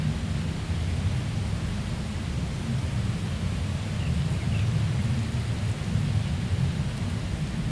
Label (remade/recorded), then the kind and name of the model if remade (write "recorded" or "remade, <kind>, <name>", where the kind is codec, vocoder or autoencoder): recorded